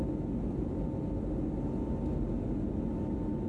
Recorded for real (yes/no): yes